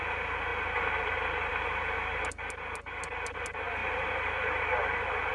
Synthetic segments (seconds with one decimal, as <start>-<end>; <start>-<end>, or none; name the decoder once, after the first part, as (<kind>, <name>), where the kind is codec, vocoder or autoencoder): 0.5-1.5 (vocoder, BigVGAN v2); 3.8-5.3